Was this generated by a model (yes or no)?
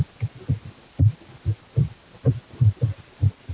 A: no